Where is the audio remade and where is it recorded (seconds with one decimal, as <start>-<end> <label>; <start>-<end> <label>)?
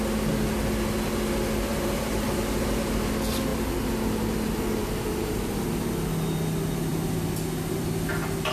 0.0-1.7 recorded; 1.7-3.1 remade; 3.1-4.8 recorded; 4.8-5.5 remade; 5.5-8.5 recorded